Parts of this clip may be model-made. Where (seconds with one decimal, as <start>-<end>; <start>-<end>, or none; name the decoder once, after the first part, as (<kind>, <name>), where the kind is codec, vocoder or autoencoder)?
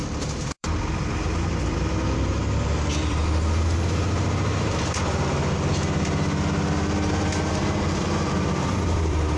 0.0-3.2 (vocoder, BigVGAN v2); 7.5-9.4